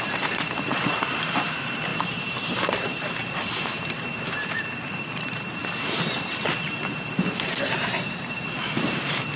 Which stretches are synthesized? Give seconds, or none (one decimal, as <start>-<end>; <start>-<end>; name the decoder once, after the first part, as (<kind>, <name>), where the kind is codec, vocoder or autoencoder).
0.0-5.6 (vocoder, BigVGAN v2); 6.5-9.4